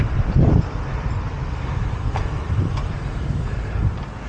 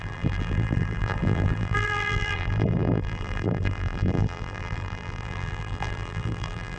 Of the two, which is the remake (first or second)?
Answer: second